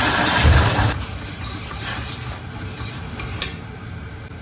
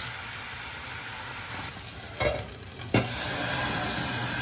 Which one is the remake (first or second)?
first